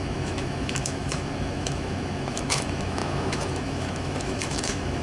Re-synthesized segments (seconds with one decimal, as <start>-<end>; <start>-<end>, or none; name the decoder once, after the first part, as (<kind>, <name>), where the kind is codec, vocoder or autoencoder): 0.0-5.0 (autoencoder, DAC-VAE)